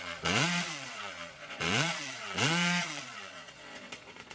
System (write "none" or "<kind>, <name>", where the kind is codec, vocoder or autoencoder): vocoder, Vocos